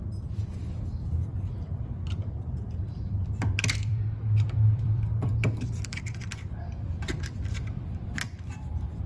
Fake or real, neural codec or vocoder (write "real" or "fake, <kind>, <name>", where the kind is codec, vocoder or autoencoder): fake, vocoder, BigVGAN v2